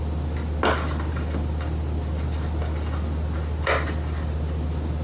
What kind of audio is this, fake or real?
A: real